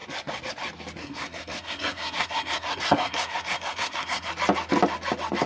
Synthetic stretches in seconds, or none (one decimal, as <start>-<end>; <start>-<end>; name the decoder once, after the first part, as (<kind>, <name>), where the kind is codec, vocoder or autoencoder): 1.0-4.3 (codec, SNAC)